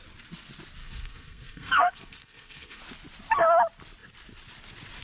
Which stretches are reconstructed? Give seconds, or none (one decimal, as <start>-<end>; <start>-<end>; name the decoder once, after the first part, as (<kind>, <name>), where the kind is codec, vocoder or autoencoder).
0.8-2.8 (codec, SNAC)